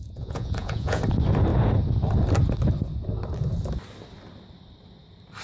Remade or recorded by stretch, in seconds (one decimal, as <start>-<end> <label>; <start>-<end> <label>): 0.0-1.0 remade; 1.0-5.4 recorded